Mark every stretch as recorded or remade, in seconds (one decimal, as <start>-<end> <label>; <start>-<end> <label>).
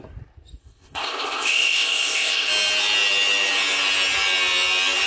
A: 0.0-0.6 recorded; 0.6-2.5 remade; 2.5-5.1 recorded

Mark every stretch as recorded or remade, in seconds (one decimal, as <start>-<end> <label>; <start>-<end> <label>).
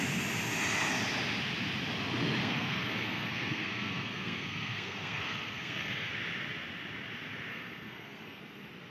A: 0.0-2.4 recorded; 2.4-6.1 remade; 6.1-7.5 recorded; 7.5-8.4 remade; 8.4-8.9 recorded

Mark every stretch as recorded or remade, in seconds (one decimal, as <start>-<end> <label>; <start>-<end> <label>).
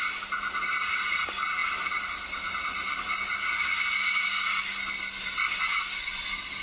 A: 0.0-6.6 recorded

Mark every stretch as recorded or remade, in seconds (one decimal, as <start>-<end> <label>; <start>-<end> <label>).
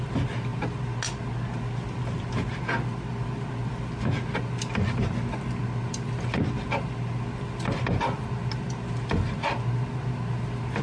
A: 0.0-10.8 recorded